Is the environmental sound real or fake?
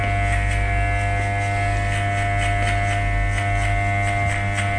real